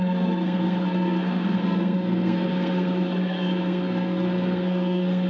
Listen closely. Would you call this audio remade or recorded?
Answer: remade